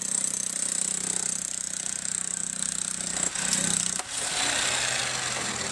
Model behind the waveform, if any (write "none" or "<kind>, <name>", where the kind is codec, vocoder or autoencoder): none